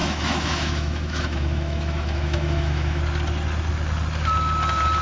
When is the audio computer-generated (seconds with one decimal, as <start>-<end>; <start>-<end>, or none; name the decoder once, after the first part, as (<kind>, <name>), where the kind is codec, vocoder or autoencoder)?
0.0-3.0 (autoencoder, DAC-VAE)